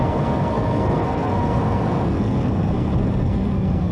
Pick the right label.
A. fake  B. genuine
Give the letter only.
A